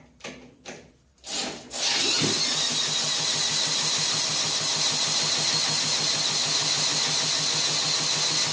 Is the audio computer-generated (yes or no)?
no